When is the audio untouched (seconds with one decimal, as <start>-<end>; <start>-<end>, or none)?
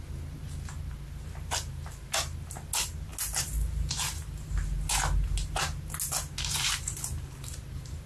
0.0-8.1